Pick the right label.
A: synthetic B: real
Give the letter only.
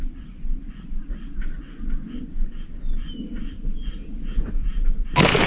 B